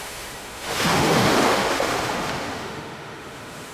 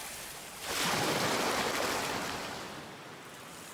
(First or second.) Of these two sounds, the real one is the second